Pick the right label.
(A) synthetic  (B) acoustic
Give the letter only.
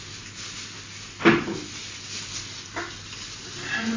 B